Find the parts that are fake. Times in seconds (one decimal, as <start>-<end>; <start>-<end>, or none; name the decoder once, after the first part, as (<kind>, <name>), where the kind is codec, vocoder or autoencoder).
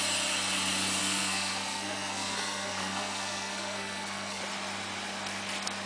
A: 1.0-4.4 (codec, SNAC)